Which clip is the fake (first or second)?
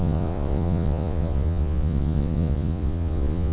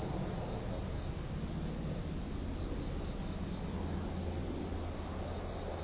first